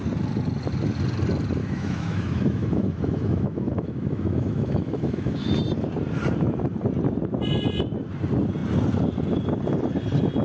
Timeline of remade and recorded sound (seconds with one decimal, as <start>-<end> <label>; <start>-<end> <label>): 0.0-1.6 recorded; 1.6-5.6 remade; 5.6-10.4 recorded